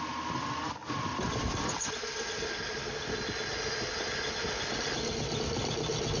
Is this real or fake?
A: real